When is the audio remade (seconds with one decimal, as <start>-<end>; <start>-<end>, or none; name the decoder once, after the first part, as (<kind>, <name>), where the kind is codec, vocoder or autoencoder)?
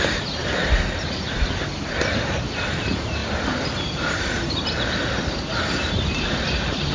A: none